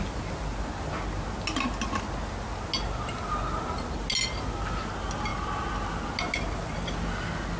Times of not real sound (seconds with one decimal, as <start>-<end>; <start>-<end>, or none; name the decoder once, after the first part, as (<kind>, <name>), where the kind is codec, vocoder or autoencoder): none

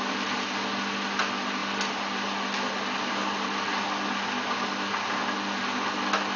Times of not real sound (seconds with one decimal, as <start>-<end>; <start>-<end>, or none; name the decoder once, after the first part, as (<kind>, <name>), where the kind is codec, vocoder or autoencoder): none

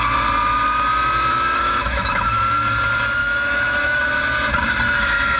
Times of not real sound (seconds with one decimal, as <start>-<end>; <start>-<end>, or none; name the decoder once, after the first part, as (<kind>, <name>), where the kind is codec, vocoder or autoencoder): 1.3-2.4 (autoencoder, DAC-VAE); 3.2-4.0